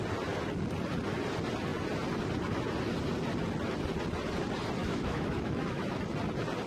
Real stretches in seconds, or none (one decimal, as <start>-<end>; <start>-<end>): 0.0-4.8; 6.0-6.7